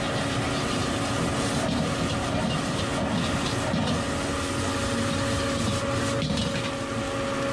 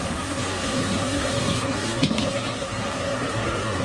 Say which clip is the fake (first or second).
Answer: second